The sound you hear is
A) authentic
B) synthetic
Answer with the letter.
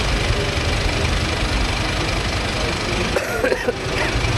A